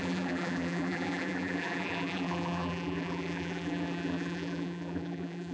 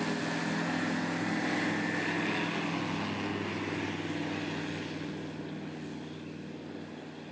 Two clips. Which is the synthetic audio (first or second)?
first